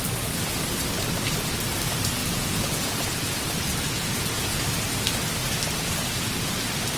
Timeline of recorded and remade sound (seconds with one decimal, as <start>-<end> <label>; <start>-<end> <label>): 0.0-2.2 recorded; 2.2-4.6 remade; 4.6-7.0 recorded

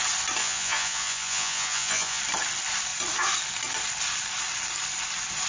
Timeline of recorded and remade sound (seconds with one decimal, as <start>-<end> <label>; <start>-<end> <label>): 0.0-0.4 recorded; 0.4-2.2 remade; 2.2-5.5 recorded